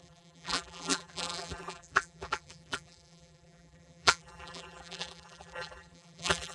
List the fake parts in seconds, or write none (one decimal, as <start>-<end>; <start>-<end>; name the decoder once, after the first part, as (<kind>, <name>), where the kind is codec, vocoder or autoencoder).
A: 0.0-6.5 (vocoder, BigVGAN v2)